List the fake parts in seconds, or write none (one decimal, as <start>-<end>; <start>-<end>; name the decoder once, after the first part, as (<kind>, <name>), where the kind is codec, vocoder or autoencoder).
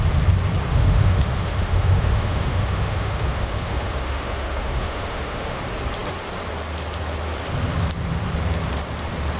0.7-5.6 (autoencoder, DAC-VAE)